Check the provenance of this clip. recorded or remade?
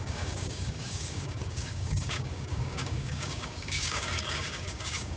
remade